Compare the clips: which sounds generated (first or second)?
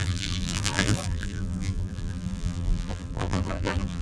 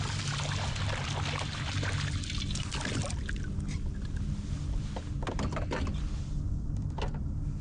first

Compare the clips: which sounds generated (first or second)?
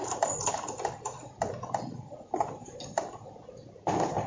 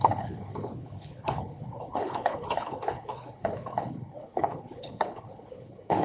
second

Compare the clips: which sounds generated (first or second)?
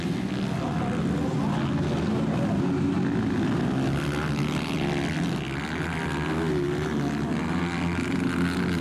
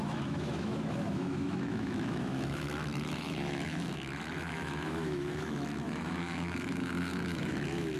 second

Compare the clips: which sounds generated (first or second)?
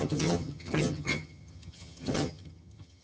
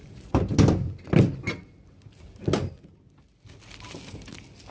first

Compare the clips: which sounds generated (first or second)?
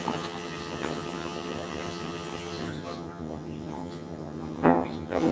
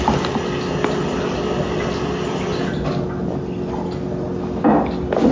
first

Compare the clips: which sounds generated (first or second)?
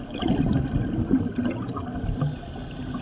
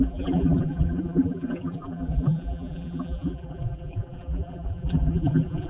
second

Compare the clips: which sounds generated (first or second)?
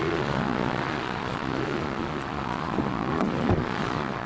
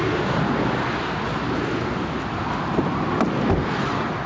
first